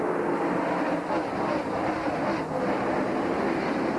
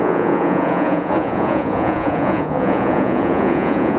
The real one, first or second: first